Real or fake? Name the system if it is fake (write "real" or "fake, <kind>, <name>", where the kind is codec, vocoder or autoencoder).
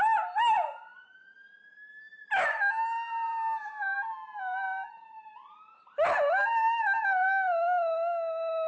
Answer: real